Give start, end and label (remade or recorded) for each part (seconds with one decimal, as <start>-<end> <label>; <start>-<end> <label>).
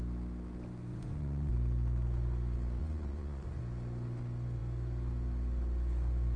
0.0-0.9 recorded; 0.9-1.5 remade; 1.5-2.8 recorded; 2.8-3.6 remade; 3.6-6.4 recorded